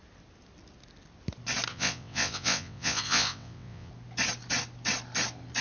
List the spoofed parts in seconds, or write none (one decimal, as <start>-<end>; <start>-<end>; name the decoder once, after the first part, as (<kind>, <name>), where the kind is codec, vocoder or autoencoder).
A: 1.7-3.9 (vocoder, WaveNeXt)